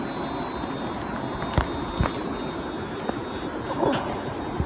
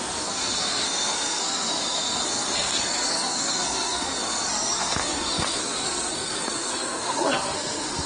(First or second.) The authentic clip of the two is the first